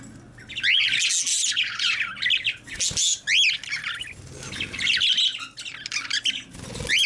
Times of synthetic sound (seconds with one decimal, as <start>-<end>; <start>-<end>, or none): 1.3-2.0